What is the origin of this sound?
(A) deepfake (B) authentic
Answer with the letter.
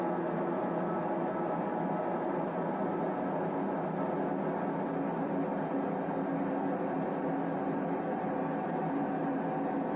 B